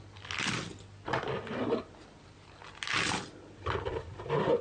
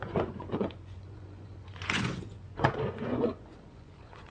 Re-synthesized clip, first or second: second